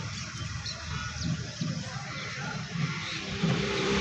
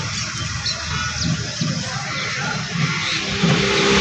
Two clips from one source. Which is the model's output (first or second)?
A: first